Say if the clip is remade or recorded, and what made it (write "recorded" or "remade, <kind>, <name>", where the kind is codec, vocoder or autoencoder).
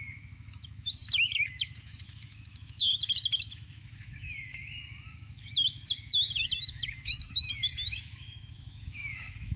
remade, autoencoder, DAC-VAE